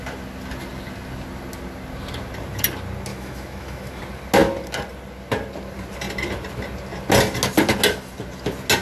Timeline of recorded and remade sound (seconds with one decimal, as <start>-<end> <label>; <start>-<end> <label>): 0.0-3.1 recorded; 3.1-4.0 remade; 4.0-8.8 recorded